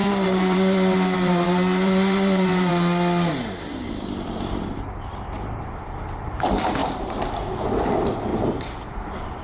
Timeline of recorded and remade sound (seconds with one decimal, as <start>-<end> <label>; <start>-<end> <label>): 0.0-2.7 remade; 2.7-6.8 recorded; 6.8-7.9 remade; 7.9-8.3 recorded; 8.3-9.4 remade